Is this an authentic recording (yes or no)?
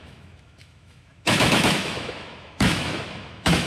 no